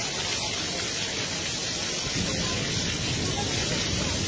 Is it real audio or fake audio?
real